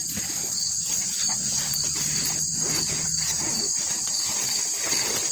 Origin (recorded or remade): recorded